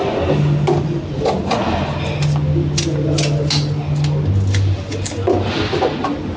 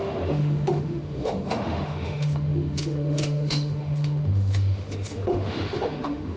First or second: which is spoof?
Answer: second